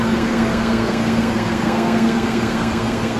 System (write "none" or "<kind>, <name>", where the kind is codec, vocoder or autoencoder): codec, SNAC